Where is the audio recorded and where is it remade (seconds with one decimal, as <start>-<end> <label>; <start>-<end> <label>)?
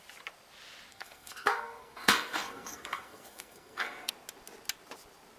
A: 0.0-0.9 recorded; 0.9-4.1 remade; 4.1-5.4 recorded